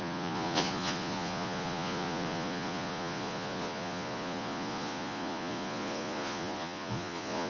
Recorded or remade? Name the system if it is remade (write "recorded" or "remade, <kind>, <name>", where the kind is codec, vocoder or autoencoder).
remade, vocoder, Vocos